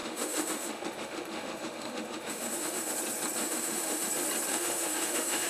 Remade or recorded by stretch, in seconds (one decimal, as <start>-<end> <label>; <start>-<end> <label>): 0.0-2.9 remade; 2.9-3.4 recorded; 3.4-4.1 remade; 4.1-4.5 recorded; 4.5-5.5 remade